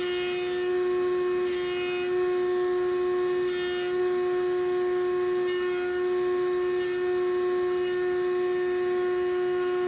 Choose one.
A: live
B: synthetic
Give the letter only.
A